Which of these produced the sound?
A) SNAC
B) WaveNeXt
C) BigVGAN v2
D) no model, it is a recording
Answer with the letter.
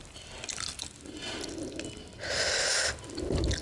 D